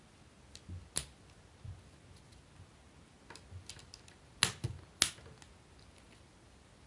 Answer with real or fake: real